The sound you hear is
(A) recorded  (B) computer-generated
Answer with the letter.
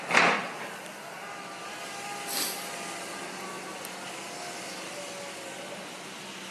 A